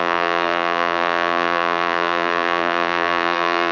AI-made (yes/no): yes